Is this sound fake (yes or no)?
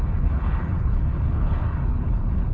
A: yes